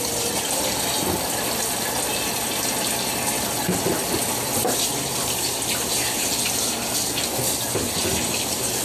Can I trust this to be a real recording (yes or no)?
yes